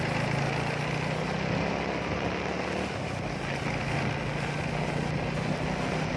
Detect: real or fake real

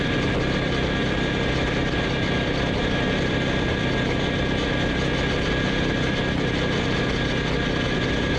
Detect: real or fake real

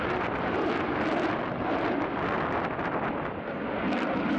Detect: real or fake real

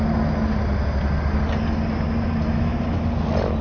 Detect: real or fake real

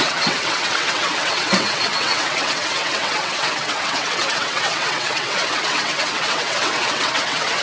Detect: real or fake fake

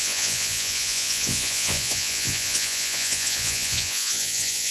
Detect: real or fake fake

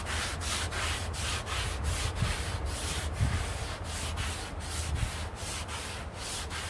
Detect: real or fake real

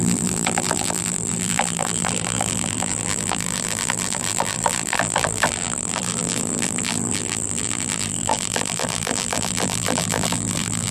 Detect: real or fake fake